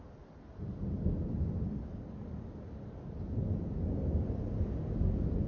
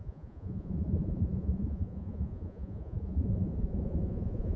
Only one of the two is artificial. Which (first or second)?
second